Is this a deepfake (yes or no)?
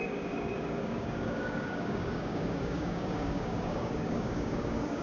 yes